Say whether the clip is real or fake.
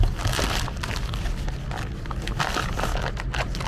real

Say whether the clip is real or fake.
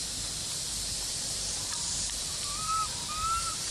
fake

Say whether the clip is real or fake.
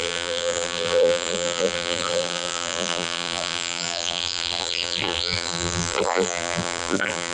fake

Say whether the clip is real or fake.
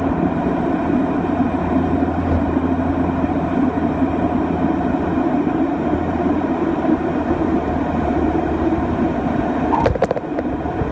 fake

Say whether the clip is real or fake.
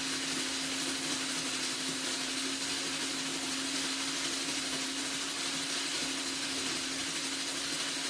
real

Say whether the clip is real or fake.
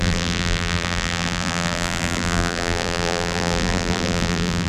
fake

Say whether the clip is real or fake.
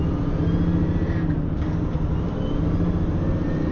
real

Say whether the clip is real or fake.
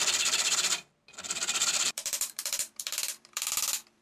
fake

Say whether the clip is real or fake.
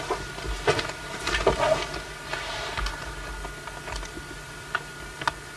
real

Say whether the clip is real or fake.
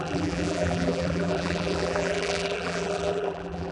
fake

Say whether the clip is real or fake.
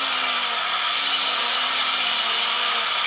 fake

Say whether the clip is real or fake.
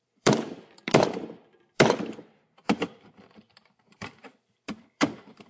fake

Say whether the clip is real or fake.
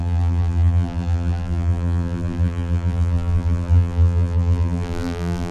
fake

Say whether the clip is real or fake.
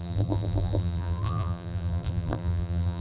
fake